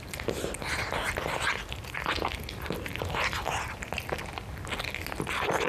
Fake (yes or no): no